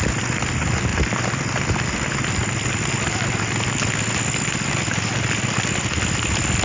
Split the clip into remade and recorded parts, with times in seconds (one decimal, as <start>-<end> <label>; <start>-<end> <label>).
0.0-6.6 recorded